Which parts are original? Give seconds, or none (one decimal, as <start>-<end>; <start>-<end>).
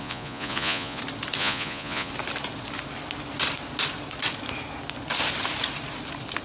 1.0-1.4; 2.1-6.4